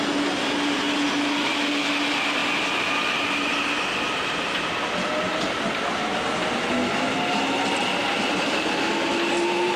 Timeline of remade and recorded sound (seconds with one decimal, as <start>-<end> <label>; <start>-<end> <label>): 0.0-9.8 recorded